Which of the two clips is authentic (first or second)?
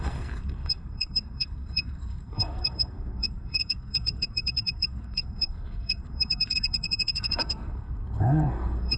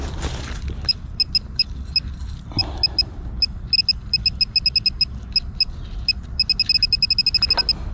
second